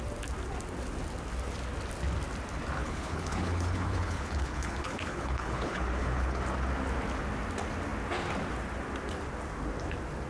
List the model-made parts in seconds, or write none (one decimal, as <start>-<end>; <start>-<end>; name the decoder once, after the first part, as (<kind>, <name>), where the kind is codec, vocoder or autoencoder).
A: 2.8-6.4 (codec, HILCodec)